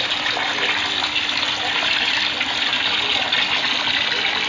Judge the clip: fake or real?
real